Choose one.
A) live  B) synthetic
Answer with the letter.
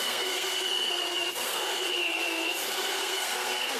B